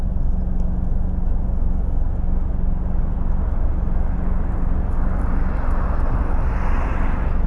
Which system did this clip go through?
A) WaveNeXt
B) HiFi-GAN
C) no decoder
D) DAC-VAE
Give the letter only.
C